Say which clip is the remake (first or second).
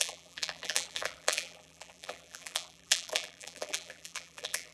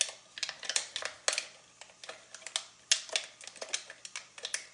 first